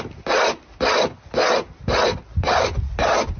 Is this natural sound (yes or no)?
yes